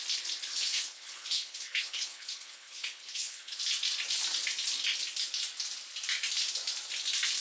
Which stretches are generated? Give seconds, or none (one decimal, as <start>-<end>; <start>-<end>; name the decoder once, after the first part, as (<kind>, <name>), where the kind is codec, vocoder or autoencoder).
0.5-3.6 (codec, HILCodec)

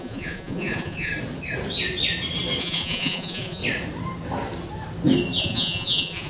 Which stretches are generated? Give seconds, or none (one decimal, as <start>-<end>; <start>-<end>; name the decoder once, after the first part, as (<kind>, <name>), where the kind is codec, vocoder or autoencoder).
0.0-1.1 (vocoder, Vocos); 2.6-3.6; 5.4-6.3

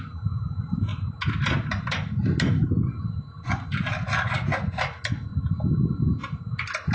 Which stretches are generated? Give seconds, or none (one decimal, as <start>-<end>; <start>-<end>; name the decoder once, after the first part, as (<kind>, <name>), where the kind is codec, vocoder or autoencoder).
none

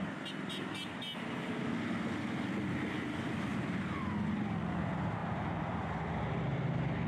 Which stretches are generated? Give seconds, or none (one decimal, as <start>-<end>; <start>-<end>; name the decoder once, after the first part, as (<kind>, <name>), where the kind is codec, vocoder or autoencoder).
3.5-4.0 (vocoder, BigVGAN v2); 5.2-5.9